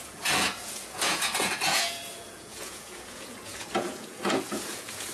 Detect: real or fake fake